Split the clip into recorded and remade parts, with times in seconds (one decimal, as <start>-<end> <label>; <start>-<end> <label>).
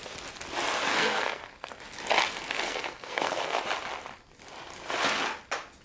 0.0-0.9 recorded; 0.9-1.7 remade; 1.7-2.3 recorded; 2.3-3.6 remade; 3.6-5.8 recorded